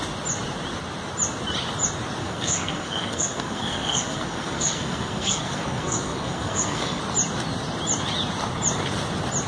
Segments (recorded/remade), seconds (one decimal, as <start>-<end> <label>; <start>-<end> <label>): 0.0-2.2 recorded; 2.2-7.0 remade; 7.0-9.5 recorded